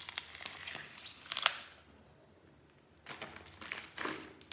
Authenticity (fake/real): real